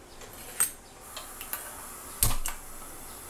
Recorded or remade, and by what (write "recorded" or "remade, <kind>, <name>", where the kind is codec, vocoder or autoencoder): recorded